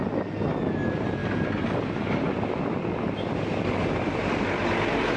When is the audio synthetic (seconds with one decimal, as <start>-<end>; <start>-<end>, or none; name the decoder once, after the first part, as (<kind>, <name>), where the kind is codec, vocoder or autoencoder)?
none